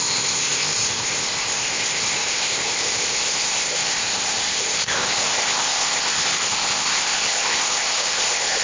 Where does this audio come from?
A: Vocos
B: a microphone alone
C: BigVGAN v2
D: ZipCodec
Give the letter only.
D